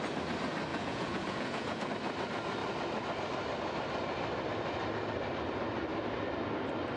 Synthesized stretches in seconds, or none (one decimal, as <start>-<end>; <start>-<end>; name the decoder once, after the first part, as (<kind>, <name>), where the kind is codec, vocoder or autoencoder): 0.7-1.9 (vocoder, Vocos)